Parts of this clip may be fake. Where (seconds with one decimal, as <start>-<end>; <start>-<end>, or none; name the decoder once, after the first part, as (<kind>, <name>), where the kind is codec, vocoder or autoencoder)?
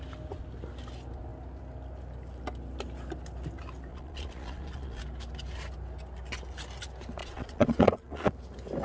3.9-5.0 (vocoder, Vocos); 7.2-8.3